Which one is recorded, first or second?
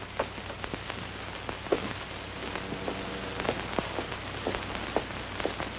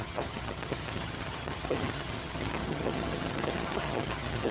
first